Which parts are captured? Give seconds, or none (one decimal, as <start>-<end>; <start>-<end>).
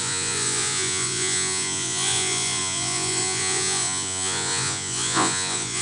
none